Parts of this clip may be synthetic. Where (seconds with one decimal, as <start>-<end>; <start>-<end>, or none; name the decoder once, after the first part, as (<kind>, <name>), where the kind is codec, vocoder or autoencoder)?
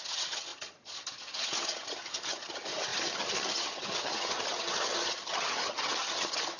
0.0-6.6 (vocoder, HiFi-GAN)